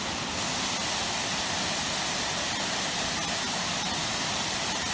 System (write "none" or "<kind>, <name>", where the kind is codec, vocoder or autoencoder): none